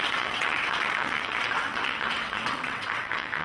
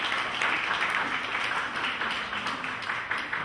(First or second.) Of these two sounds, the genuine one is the second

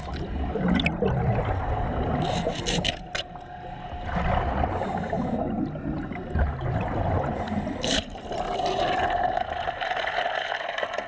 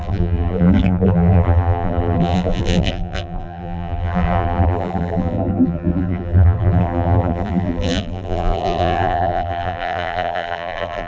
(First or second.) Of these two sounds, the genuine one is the first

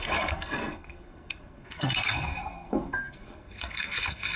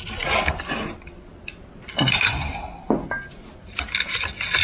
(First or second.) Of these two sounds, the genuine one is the second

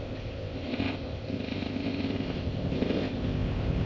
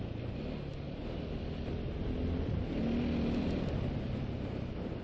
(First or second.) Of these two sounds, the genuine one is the second